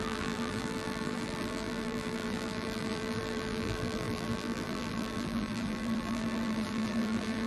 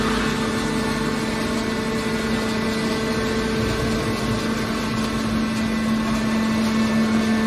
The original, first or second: second